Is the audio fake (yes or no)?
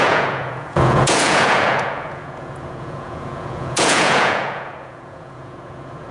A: yes